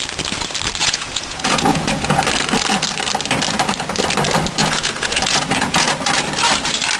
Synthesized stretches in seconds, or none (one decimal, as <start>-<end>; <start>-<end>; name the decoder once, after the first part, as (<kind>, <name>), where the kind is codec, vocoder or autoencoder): 0.8-2.2 (vocoder, Vocos); 4.6-5.9